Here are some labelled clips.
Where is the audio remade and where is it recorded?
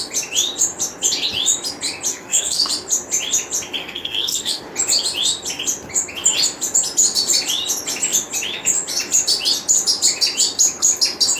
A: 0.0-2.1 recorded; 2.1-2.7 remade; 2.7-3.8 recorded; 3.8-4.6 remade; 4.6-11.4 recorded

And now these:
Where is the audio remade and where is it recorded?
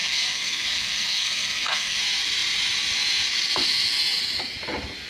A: 0.0-2.0 remade; 2.0-5.1 recorded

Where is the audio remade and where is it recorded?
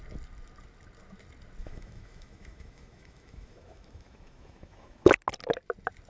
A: 0.0-1.6 recorded; 1.6-5.1 remade; 5.1-6.1 recorded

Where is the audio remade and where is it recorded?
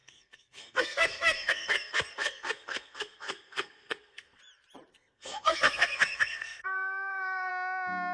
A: 0.0-4.4 remade; 4.4-4.9 recorded; 4.9-7.5 remade; 7.5-8.1 recorded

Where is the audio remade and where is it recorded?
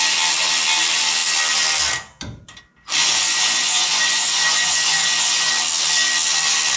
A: 0.0-3.0 recorded; 3.0-5.5 remade; 5.5-6.8 recorded